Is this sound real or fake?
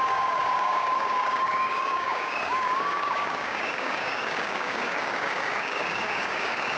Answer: fake